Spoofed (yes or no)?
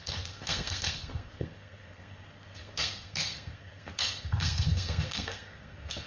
yes